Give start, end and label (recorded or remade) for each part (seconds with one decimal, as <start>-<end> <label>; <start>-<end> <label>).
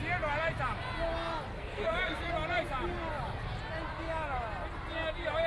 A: 0.0-1.5 recorded; 1.5-2.3 remade; 2.3-5.5 recorded